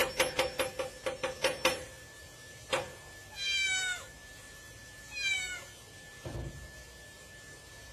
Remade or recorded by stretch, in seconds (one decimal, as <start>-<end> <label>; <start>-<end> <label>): 0.0-7.9 recorded